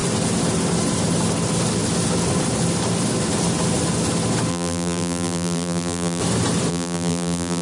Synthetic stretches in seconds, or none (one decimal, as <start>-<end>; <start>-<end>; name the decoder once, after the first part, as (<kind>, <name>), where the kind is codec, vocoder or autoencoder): 4.5-6.2 (vocoder, BigVGAN v2); 6.7-7.6